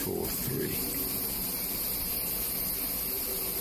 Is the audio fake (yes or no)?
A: no